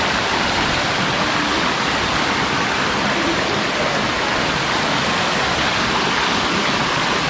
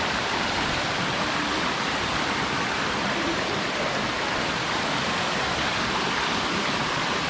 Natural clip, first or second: first